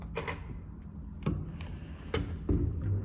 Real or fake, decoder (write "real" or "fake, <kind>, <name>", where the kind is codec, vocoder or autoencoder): real